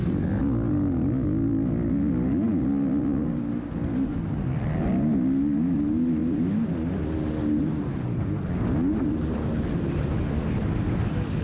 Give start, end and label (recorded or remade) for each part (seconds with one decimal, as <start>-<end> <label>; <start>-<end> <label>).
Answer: 0.0-11.4 recorded